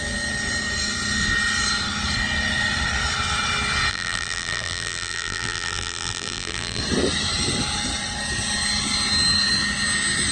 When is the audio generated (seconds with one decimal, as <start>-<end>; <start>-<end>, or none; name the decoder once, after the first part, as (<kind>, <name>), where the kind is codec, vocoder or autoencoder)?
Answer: 3.9-6.8 (vocoder, BigVGAN v2)